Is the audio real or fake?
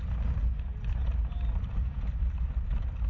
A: real